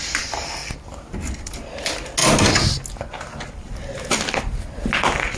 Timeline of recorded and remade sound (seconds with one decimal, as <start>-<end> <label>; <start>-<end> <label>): 0.0-0.6 recorded; 0.6-1.1 remade; 1.1-5.4 recorded